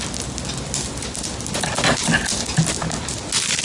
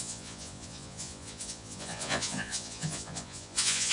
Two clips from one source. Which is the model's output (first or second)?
second